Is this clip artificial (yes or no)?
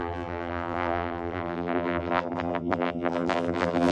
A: yes